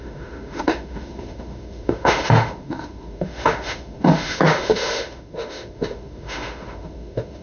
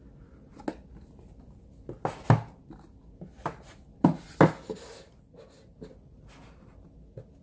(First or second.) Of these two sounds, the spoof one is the first